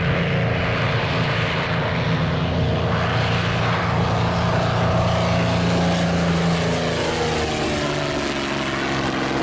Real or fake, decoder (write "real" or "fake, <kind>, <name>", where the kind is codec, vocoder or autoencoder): real